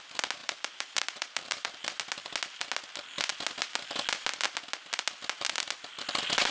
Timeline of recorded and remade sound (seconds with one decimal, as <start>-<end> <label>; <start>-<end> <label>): 0.0-0.4 recorded; 0.4-1.8 remade; 1.8-6.5 recorded

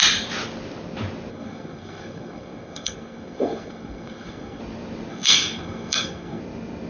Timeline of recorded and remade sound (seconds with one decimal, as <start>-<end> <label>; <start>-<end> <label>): 0.0-1.3 recorded; 1.3-4.6 remade; 4.6-5.1 recorded; 5.1-6.4 remade; 6.4-6.9 recorded